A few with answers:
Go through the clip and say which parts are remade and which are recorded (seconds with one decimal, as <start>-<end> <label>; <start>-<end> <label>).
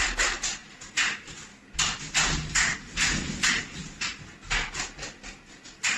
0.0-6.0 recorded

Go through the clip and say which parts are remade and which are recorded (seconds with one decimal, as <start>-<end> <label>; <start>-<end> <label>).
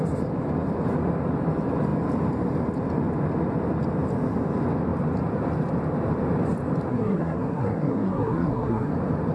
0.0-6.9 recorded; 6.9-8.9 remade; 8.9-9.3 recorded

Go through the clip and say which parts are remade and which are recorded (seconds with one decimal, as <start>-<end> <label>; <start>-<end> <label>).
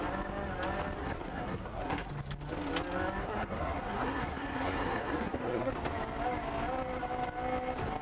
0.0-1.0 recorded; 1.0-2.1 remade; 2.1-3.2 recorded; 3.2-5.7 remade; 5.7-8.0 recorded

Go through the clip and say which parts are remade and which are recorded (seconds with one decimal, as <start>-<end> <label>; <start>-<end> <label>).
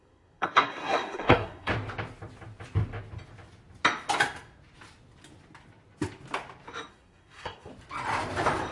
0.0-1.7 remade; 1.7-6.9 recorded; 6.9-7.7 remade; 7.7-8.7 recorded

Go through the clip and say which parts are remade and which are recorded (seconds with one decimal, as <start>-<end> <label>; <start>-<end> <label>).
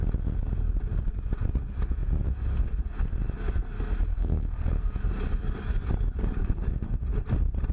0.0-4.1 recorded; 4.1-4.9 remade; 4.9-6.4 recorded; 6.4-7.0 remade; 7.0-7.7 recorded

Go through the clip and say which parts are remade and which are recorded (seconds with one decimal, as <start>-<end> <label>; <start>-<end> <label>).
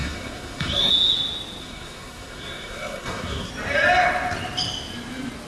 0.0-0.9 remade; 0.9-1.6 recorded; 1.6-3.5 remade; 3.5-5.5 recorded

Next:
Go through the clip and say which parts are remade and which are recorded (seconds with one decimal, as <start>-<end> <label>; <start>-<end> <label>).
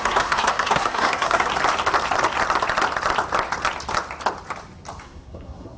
0.0-1.5 remade; 1.5-5.0 recorded; 5.0-5.8 remade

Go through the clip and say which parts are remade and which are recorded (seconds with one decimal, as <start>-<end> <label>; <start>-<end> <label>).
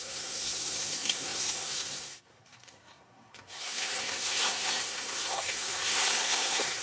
0.0-6.8 remade